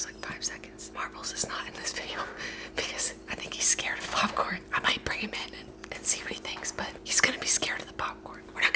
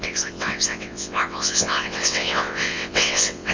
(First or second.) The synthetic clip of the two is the second